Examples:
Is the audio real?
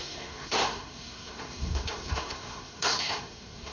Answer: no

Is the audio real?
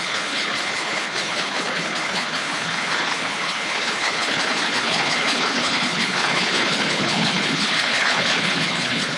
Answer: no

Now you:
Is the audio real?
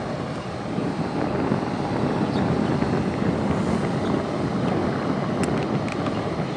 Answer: yes